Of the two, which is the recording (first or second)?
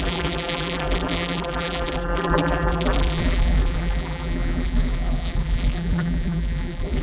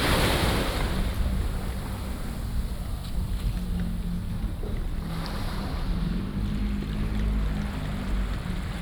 second